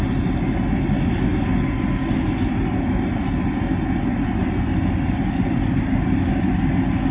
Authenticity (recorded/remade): recorded